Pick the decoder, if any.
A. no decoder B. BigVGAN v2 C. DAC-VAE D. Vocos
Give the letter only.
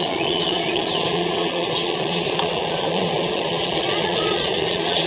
D